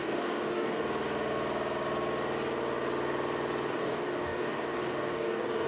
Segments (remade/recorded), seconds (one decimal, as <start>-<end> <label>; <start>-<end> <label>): 0.0-0.8 remade; 0.8-3.7 recorded; 3.7-5.7 remade